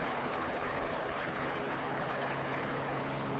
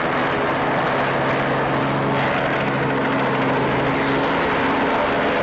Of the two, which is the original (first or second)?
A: second